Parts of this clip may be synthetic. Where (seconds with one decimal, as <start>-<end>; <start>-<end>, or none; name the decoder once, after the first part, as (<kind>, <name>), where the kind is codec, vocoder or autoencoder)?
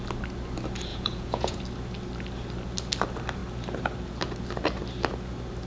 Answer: 0.9-1.6 (vocoder, Vocos)